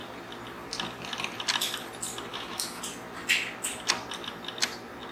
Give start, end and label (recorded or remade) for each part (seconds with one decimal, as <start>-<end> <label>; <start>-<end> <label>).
0.0-2.3 recorded; 2.3-2.8 remade; 2.8-5.1 recorded